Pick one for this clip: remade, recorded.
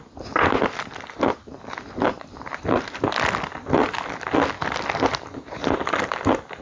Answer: recorded